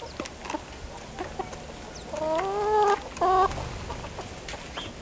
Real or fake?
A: real